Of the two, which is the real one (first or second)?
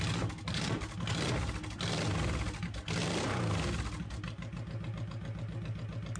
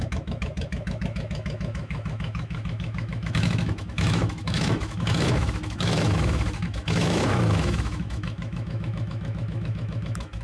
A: first